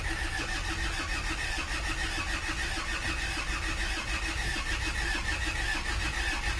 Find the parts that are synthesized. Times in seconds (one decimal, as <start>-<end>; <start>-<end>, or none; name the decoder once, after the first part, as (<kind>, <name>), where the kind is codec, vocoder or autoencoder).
none